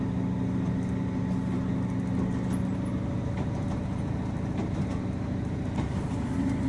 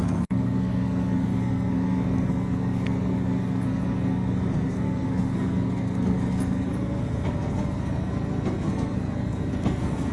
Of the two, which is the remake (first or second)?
second